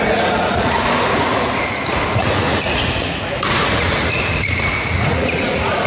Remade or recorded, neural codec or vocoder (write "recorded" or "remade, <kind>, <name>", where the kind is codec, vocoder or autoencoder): remade, vocoder, Vocos